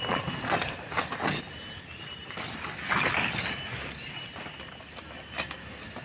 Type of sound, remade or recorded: recorded